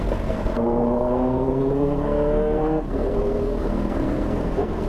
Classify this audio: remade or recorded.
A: remade